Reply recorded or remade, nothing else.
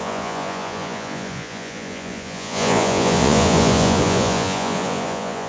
remade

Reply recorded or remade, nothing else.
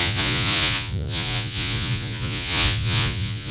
remade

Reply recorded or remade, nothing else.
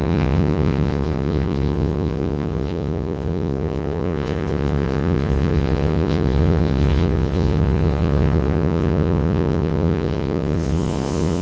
remade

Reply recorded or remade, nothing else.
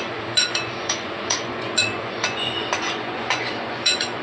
remade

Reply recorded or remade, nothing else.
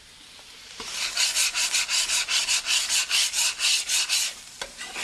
recorded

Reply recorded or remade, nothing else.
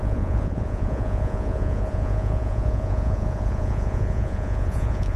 remade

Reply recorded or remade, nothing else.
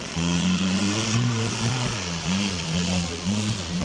remade